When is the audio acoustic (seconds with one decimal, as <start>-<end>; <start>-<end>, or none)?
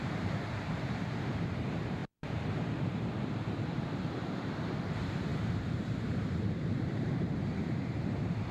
none